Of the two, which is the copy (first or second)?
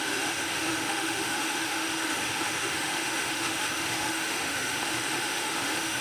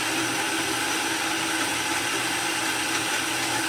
first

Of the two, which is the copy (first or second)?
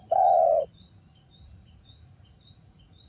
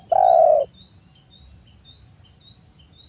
first